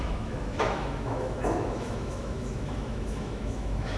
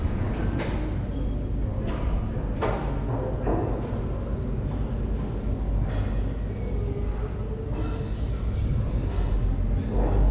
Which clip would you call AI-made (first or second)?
first